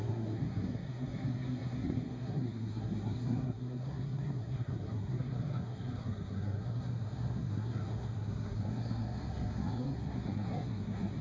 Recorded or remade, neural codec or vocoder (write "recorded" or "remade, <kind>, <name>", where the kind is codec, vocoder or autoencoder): remade, codec, SNAC